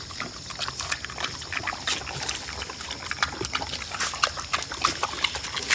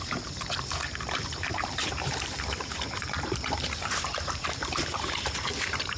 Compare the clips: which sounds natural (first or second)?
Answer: first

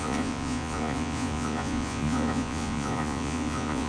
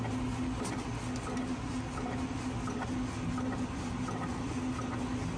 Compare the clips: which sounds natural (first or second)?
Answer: second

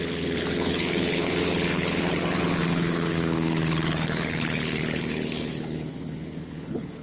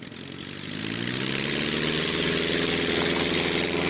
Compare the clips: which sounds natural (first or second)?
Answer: second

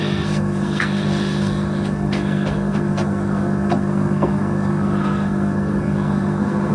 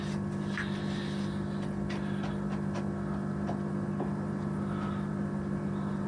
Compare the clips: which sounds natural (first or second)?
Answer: second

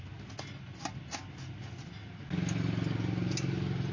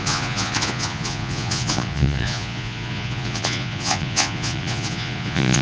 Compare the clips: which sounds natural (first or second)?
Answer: first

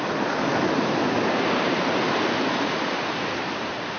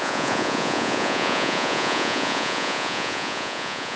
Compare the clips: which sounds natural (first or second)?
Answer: first